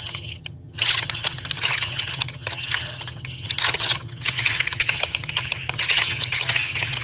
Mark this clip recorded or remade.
remade